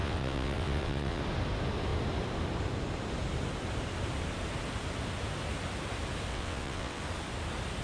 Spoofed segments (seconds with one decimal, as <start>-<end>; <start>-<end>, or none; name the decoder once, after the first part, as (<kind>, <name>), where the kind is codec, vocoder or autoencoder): 0.0-1.2 (vocoder, WaveNeXt); 6.3-7.0